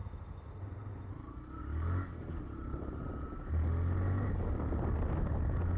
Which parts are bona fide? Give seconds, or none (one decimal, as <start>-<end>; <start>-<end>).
1.1-5.8